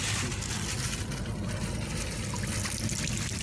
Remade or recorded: recorded